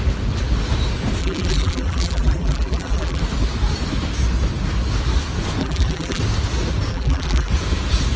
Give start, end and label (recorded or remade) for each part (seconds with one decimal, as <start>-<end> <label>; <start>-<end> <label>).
0.0-1.2 recorded; 1.2-3.2 remade; 3.2-5.6 recorded; 5.6-6.2 remade; 6.2-6.9 recorded; 6.9-7.5 remade; 7.5-8.2 recorded